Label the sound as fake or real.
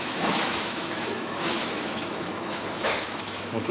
fake